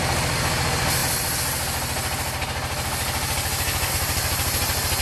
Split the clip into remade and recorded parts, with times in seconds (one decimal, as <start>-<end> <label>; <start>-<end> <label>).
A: 0.0-5.0 recorded